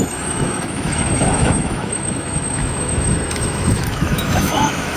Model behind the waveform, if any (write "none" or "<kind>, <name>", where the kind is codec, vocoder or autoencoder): autoencoder, DAC-VAE